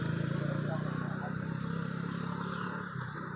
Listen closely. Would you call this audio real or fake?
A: real